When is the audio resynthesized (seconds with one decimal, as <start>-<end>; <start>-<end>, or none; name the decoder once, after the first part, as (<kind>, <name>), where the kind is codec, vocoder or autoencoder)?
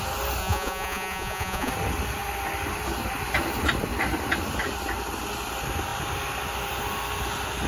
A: 0.4-1.7 (vocoder, Vocos)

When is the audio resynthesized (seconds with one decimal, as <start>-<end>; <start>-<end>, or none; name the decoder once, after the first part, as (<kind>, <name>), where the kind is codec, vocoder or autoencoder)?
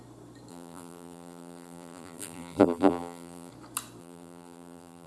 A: 0.5-3.5 (vocoder, BigVGAN v2); 4.0-5.1